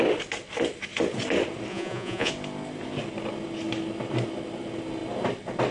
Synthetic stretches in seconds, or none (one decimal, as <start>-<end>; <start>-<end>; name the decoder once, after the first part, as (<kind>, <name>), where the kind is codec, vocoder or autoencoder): 1.7-2.3 (vocoder, Vocos)